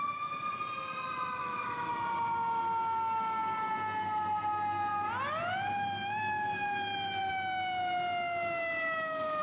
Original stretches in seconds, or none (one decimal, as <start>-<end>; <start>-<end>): 0.0-1.4; 1.9-9.4